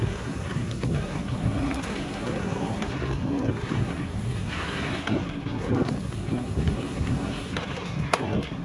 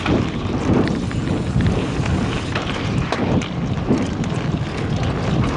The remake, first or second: first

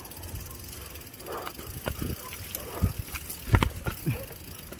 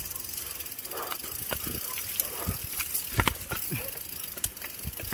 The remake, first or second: second